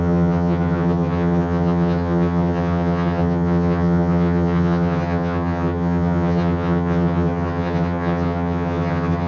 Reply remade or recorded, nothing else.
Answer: remade